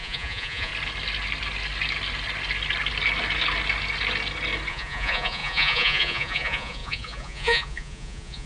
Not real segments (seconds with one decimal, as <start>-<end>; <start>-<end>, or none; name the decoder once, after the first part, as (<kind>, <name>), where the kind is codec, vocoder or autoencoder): 0.0-0.7 (vocoder, Vocos); 4.7-8.5